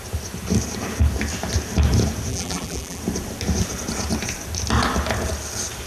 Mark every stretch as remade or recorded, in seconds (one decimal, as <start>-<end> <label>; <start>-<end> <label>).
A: 0.0-2.3 recorded; 2.3-3.0 remade; 3.0-5.9 recorded